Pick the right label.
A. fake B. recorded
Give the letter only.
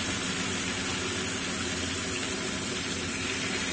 B